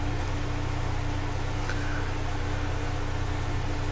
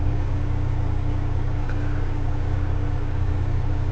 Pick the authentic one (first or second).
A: first